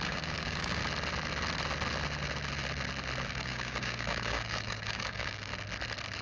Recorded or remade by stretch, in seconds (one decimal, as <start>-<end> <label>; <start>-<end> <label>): 0.0-0.8 remade; 0.8-3.3 recorded; 3.3-5.5 remade; 5.5-6.2 recorded